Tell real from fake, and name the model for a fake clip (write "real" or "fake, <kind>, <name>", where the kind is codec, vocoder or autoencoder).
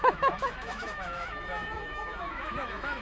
fake, autoencoder, DAC-VAE